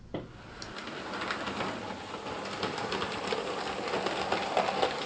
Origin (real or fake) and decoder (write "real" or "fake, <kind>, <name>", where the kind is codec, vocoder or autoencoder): real